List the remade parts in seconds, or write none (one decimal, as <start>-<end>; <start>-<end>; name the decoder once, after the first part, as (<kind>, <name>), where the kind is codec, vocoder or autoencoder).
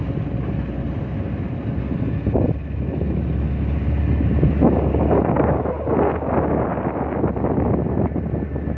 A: 4.9-5.6 (codec, DAC)